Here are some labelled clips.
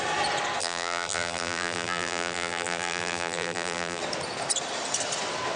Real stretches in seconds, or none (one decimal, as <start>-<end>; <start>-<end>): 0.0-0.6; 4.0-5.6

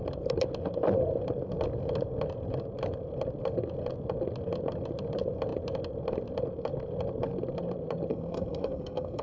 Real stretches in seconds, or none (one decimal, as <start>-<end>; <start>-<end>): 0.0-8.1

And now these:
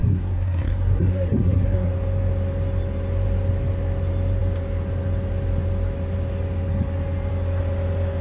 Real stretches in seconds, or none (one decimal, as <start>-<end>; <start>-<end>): 1.9-8.2

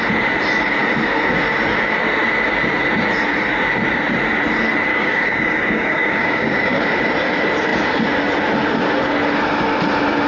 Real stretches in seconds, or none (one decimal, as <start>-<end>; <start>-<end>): 0.0-4.9; 6.8-10.3